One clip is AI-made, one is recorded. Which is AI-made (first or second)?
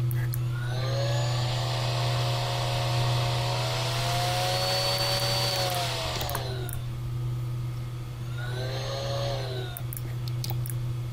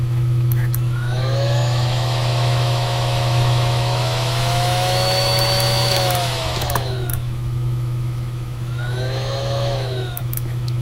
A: second